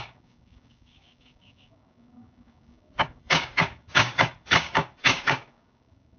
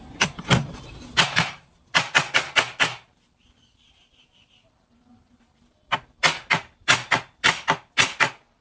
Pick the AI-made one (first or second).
first